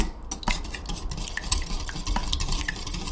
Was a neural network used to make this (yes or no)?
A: no